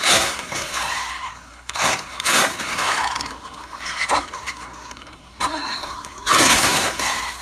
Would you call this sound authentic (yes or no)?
no